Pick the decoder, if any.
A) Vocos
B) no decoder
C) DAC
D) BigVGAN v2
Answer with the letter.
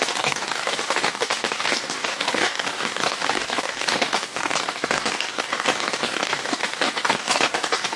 C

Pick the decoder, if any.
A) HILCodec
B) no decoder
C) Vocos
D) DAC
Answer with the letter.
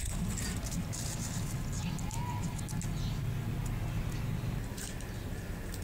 B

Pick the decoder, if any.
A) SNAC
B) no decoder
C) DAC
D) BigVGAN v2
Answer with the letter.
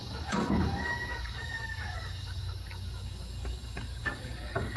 C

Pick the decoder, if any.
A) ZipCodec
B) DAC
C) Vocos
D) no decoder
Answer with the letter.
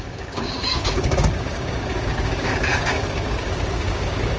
B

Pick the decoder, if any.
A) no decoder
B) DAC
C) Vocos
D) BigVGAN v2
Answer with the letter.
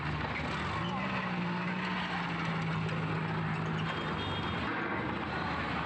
A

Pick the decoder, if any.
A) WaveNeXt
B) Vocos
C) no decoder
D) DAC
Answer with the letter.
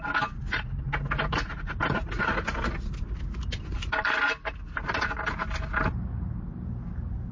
C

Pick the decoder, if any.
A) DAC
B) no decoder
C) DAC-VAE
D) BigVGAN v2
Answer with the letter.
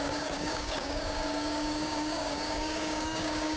A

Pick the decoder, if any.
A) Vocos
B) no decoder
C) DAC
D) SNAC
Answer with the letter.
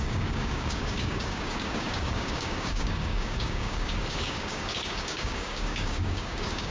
C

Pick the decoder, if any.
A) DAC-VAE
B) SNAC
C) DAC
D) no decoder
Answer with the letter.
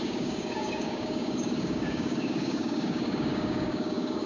C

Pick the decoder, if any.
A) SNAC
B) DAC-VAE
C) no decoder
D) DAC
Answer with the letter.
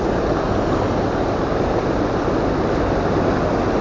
C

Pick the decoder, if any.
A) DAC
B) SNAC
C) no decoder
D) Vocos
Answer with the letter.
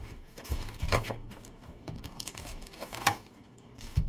A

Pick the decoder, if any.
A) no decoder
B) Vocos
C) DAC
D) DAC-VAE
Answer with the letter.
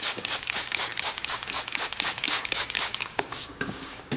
C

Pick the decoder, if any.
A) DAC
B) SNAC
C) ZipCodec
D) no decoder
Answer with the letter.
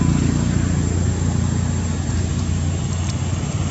D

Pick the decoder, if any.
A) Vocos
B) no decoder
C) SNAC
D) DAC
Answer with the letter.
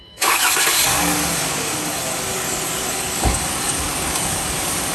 D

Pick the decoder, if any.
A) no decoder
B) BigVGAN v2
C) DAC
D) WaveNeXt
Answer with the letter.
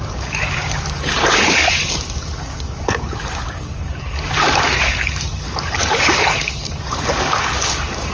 C